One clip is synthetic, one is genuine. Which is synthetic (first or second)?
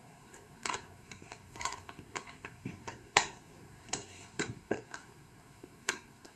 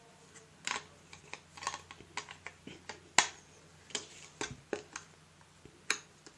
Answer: first